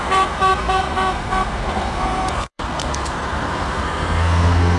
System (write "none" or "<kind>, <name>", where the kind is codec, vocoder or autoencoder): codec, SNAC